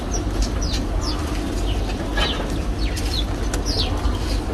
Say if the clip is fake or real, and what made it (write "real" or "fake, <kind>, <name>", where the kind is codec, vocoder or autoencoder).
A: real